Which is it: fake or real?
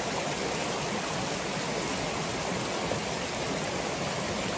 real